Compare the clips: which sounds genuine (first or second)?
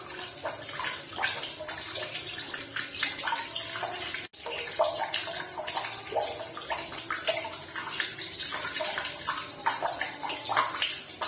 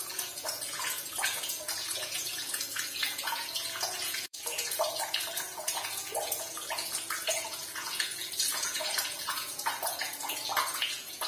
first